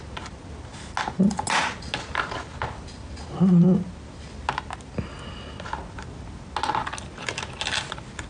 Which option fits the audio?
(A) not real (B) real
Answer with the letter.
B